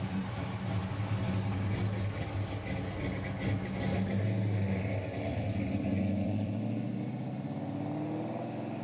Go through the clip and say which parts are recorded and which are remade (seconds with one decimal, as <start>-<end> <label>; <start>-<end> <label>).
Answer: 0.0-5.3 recorded; 5.3-6.5 remade; 6.5-8.8 recorded